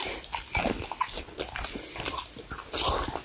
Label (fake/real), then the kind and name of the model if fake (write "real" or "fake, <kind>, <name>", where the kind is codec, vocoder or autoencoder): real